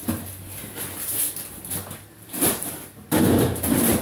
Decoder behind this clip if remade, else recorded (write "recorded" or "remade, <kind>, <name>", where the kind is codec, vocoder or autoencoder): recorded